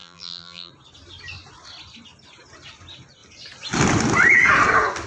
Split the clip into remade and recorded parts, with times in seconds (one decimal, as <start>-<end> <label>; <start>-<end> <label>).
0.0-0.7 remade; 0.7-5.1 recorded